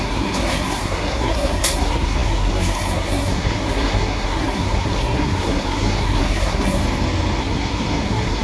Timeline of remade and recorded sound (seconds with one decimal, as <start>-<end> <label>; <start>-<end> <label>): 0.0-6.8 remade; 6.8-7.4 recorded; 7.4-8.4 remade